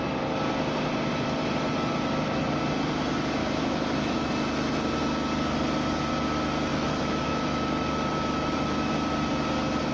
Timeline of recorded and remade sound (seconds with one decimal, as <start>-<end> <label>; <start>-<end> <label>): 0.0-3.4 recorded; 3.4-4.3 remade; 4.3-6.7 recorded; 6.7-8.9 remade; 8.9-9.9 recorded